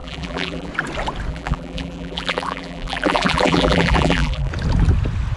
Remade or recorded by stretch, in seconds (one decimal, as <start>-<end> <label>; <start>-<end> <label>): 0.0-0.7 remade; 0.7-1.3 recorded; 1.3-4.5 remade; 4.5-5.4 recorded